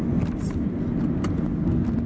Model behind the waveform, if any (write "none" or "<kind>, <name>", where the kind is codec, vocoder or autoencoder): none